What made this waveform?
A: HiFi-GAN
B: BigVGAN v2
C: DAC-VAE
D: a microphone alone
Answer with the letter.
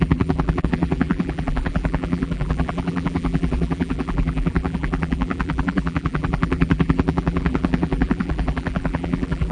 B